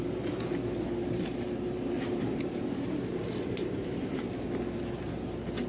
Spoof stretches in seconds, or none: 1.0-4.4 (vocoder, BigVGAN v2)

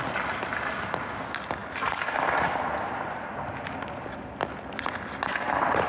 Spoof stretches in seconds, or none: 1.6-5.1 (vocoder, BigVGAN v2)